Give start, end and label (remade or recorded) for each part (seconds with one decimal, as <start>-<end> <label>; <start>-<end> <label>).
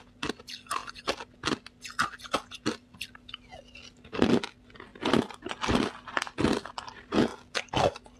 0.0-8.2 recorded